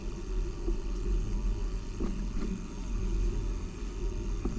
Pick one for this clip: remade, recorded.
recorded